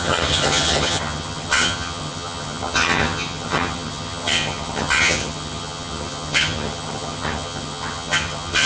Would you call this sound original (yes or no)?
no